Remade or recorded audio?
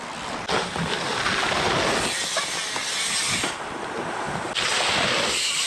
recorded